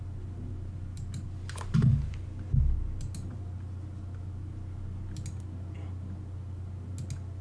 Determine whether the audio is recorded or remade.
recorded